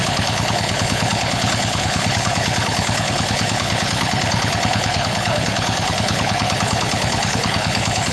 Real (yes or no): no